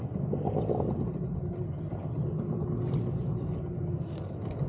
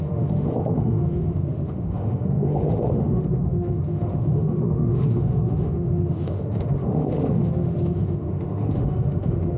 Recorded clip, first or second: first